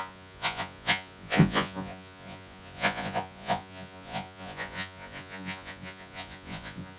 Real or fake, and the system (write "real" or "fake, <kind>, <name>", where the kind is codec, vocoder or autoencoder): fake, vocoder, Vocos